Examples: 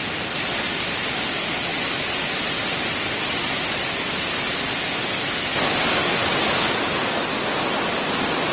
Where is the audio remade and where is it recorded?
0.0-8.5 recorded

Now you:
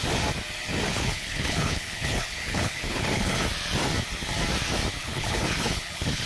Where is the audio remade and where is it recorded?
0.0-0.9 recorded; 0.9-3.4 remade; 3.4-5.0 recorded; 5.0-6.3 remade

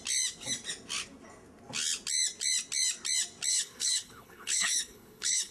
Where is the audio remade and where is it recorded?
0.0-3.5 recorded; 3.5-5.5 remade

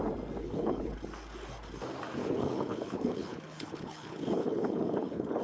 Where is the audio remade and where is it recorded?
0.0-0.4 recorded; 0.4-0.9 remade; 0.9-2.2 recorded; 2.2-5.4 remade

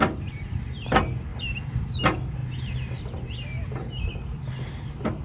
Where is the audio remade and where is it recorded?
0.0-5.2 recorded

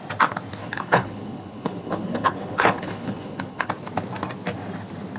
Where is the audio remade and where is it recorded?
0.0-0.6 recorded; 0.6-3.7 remade; 3.7-5.2 recorded